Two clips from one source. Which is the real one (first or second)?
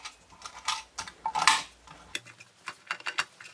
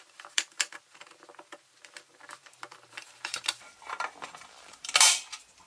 first